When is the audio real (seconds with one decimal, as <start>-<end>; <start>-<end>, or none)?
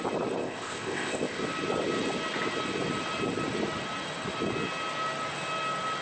0.0-0.4; 1.4-6.0